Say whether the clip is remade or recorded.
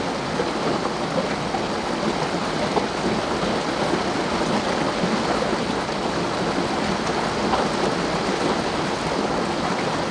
recorded